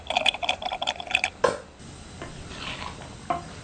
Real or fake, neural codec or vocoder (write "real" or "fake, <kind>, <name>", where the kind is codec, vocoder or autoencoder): real